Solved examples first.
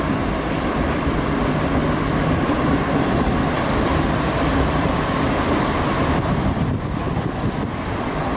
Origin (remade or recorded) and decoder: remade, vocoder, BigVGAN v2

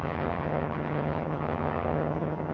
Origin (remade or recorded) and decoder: remade, vocoder, HiFi-GAN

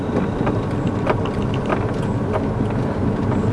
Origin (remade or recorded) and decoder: recorded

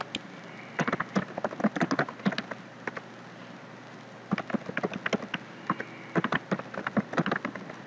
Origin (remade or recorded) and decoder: recorded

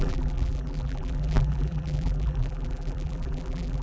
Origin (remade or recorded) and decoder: remade, vocoder, BigVGAN v2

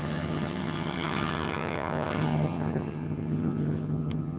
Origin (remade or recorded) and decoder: remade, vocoder, HiFi-GAN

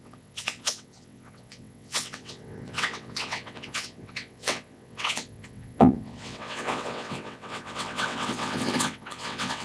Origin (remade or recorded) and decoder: remade, vocoder, WaveNeXt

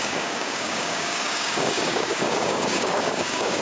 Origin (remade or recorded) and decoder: remade, codec, DAC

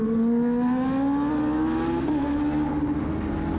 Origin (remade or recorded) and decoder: recorded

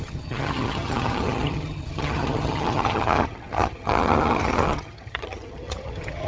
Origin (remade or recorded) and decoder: remade, vocoder, HiFi-GAN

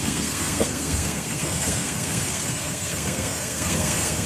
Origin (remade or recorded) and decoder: remade, codec, SNAC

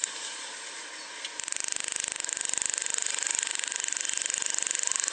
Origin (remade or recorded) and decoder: recorded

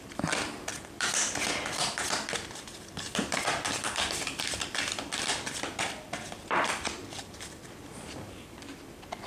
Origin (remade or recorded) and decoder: remade, vocoder, BigVGAN v2